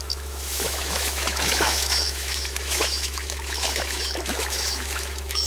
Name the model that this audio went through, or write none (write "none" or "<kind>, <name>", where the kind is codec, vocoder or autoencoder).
autoencoder, DAC-VAE